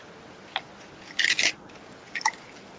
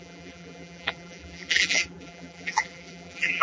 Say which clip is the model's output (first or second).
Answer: second